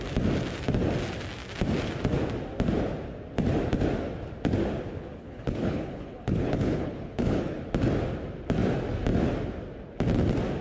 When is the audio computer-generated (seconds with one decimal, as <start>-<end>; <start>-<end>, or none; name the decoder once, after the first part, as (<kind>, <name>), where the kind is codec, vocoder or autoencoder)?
4.9-7.6 (codec, HILCodec)